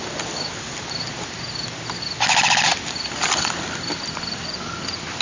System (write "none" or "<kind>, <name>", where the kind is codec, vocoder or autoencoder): none